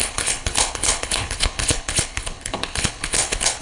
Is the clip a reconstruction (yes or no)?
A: yes